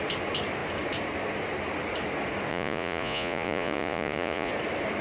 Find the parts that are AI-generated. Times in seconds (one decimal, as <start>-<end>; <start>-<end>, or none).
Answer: 2.5-4.5